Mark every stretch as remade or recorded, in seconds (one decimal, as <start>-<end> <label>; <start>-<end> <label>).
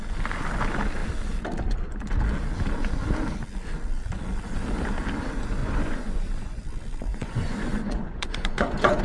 0.0-5.6 recorded; 5.6-6.6 remade; 6.6-7.1 recorded; 7.1-9.0 remade